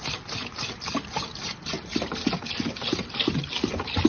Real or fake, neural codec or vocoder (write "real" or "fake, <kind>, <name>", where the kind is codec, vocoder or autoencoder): real